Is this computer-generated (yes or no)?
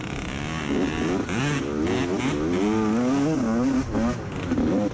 no